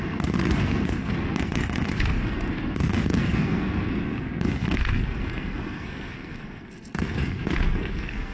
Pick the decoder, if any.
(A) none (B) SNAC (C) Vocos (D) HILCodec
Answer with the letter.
B